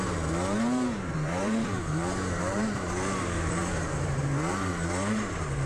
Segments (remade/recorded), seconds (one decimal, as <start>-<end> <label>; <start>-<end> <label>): 0.0-5.7 remade